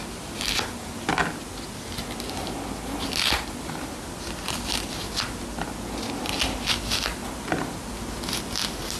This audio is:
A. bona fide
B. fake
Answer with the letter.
A